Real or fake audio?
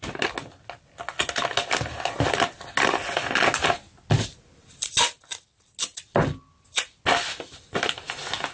real